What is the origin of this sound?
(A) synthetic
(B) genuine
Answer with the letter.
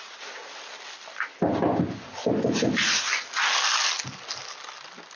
B